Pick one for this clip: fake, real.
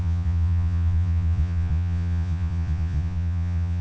fake